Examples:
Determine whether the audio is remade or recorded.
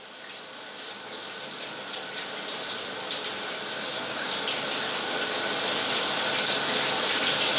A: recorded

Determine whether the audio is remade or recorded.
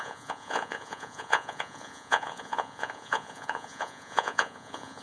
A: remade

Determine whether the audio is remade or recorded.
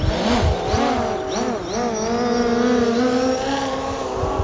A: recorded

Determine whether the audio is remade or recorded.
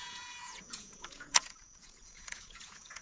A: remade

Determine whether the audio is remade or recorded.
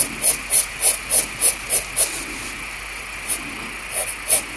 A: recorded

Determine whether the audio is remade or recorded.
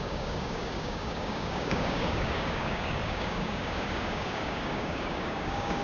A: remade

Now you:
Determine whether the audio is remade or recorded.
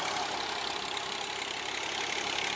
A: recorded